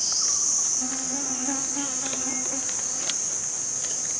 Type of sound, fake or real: real